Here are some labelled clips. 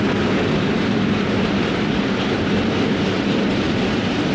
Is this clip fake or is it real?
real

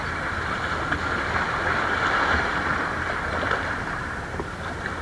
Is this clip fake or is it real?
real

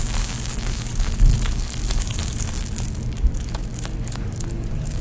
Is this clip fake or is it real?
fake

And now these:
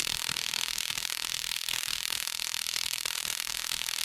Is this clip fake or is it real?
fake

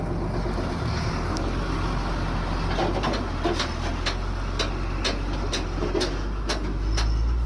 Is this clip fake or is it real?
real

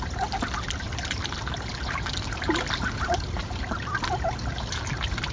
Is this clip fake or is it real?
real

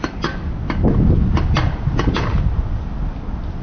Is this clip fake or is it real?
real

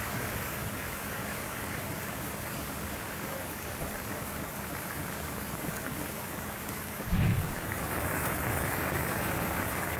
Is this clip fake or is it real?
fake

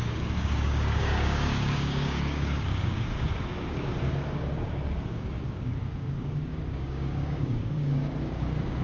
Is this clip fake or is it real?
fake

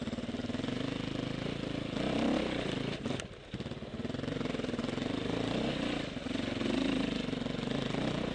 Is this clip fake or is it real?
real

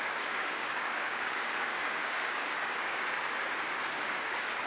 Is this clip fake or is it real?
fake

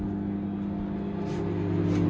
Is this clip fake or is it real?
real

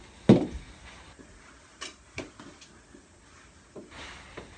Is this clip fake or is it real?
real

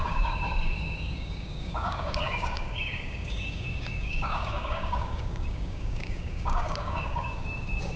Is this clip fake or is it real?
fake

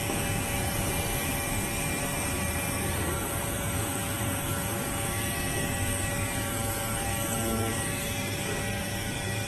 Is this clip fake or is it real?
fake